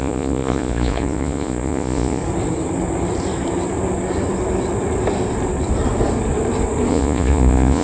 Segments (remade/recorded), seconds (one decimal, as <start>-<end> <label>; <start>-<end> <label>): 0.0-2.2 remade; 2.2-6.9 recorded; 6.9-7.8 remade